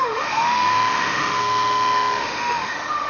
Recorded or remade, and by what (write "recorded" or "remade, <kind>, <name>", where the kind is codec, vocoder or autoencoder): remade, autoencoder, DAC-VAE